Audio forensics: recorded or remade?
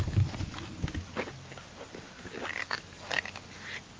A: recorded